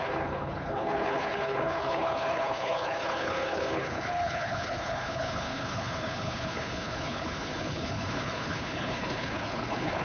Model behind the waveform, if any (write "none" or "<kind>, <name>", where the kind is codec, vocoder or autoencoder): codec, HILCodec